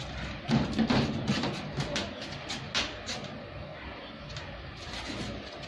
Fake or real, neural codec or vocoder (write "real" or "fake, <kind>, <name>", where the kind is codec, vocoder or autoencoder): real